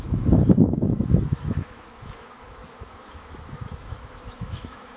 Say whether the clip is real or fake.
fake